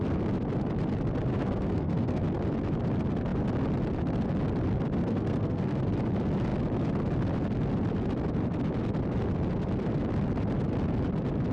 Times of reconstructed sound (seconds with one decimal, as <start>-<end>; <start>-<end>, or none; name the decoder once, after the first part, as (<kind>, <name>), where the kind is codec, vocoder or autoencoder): 1.3-2.2 (codec, SNAC); 5.0-5.8